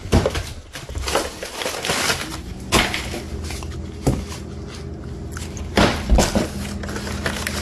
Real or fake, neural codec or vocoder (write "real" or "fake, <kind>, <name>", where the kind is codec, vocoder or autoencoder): real